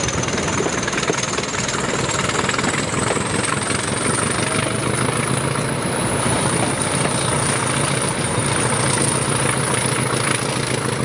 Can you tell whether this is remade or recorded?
remade